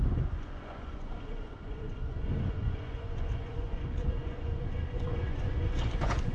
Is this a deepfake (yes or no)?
yes